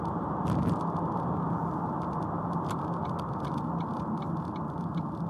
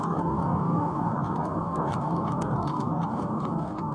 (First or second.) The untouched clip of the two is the first